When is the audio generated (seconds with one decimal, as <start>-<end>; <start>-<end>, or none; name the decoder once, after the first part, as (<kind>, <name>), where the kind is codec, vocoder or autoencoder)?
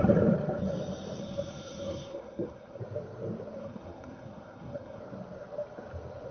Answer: 1.2-2.8 (codec, SNAC); 3.6-5.0